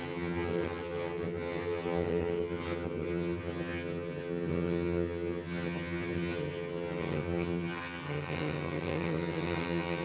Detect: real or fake fake